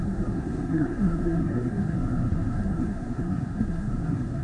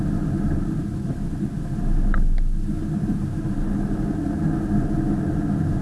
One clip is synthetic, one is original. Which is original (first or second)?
second